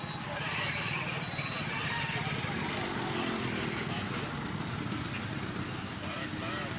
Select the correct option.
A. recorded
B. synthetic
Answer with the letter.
A